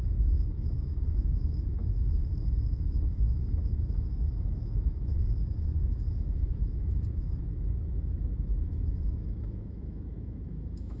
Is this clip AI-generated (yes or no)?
yes